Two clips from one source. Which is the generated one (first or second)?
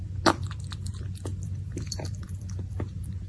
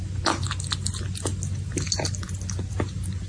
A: first